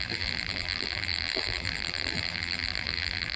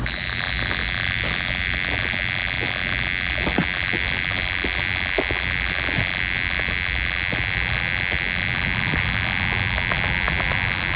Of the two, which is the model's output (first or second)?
first